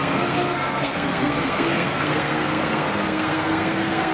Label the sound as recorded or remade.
remade